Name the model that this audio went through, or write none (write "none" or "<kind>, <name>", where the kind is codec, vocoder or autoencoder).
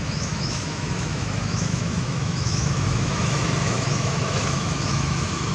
autoencoder, DAC-VAE